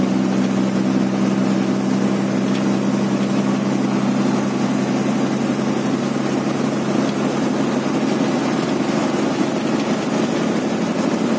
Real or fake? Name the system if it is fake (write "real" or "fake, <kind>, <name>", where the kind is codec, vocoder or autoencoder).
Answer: real